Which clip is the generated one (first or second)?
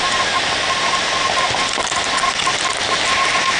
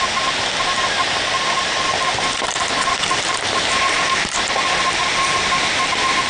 second